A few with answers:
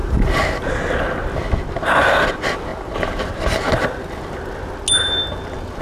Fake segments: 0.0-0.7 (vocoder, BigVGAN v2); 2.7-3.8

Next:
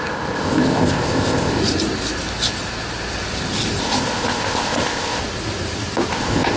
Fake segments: 0.0-1.6 (codec, ZipCodec); 3.8-5.2; 6.1-6.6

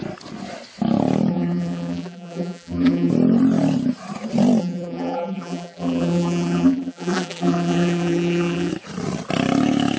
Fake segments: 1.3-3.1 (vocoder, BigVGAN v2); 4.6-8.7

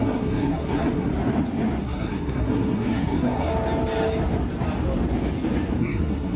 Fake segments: 0.0-1.1 (codec, SNAC); 1.8-3.5; 5.8-6.4

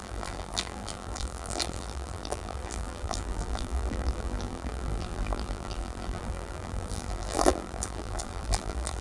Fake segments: 0.0-9.0 (vocoder, BigVGAN v2)

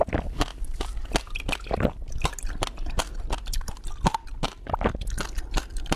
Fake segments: none